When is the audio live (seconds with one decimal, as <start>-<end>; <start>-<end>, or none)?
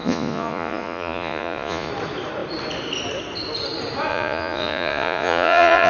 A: 1.9-4.1